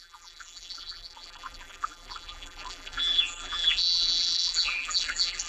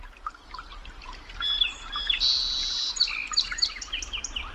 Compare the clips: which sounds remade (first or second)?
first